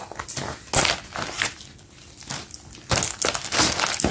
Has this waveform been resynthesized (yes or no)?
no